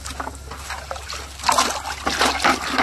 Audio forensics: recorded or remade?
recorded